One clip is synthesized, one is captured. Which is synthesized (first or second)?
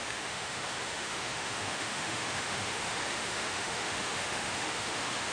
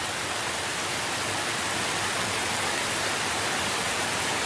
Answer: first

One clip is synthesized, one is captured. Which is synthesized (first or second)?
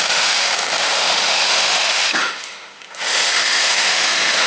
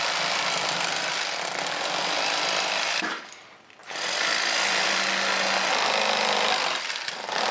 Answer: first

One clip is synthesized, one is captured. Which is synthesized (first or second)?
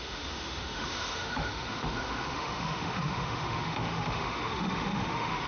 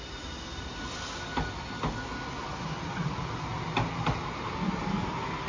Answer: first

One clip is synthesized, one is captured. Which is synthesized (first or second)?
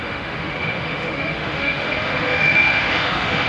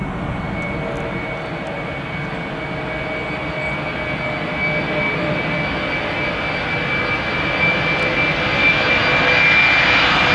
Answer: first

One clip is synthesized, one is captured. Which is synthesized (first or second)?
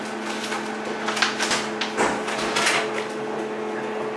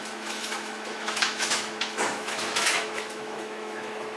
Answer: second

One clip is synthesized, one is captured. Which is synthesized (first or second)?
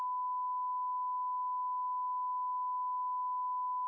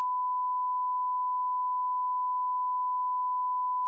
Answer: second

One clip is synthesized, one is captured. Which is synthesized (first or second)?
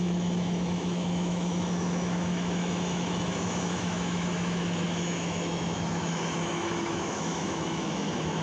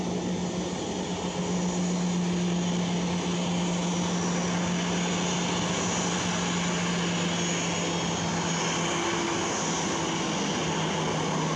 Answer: first